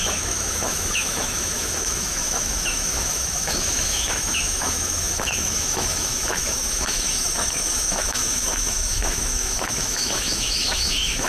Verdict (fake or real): fake